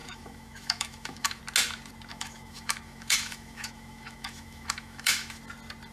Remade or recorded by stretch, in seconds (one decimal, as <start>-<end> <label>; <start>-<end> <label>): 0.0-1.4 remade; 1.4-2.1 recorded; 2.1-5.4 remade; 5.4-5.9 recorded